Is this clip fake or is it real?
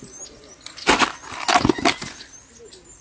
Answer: real